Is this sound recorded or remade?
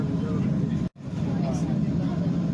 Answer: recorded